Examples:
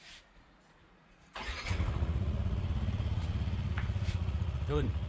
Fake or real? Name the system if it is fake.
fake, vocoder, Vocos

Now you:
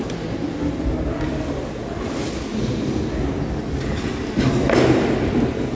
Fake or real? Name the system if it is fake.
real